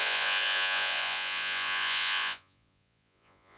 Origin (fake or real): fake